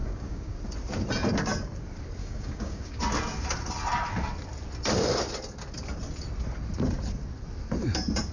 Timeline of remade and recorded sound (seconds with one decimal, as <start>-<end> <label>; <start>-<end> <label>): 0.0-0.6 remade; 0.6-2.2 recorded; 2.2-3.0 remade; 3.0-8.3 recorded